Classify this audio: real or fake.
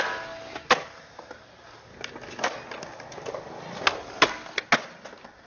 real